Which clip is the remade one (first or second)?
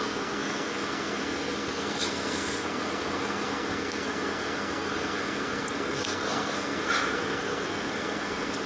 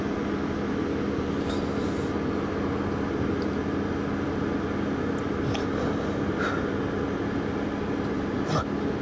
first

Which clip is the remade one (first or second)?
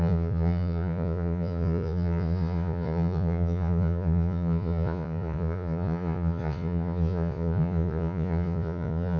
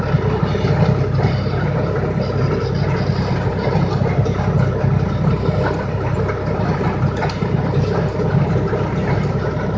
first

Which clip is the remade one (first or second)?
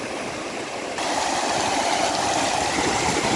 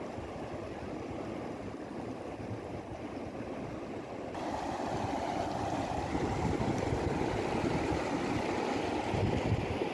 first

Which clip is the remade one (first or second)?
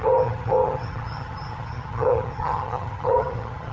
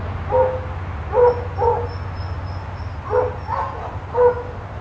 first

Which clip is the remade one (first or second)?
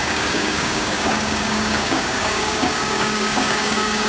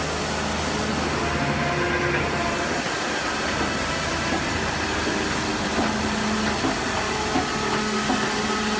first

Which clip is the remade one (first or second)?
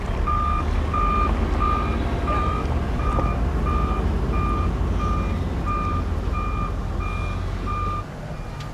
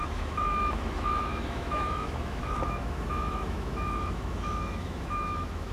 second